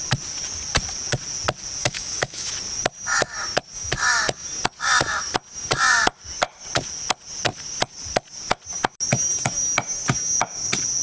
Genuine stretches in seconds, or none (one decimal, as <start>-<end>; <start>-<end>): 0.0-1.8; 2.5-11.0